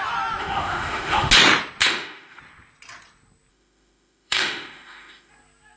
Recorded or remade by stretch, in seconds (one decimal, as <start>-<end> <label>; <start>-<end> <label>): 0.0-0.4 recorded; 0.4-1.3 remade; 1.3-1.8 recorded; 1.8-2.4 remade; 2.4-3.5 recorded; 3.5-5.3 remade; 5.3-5.8 recorded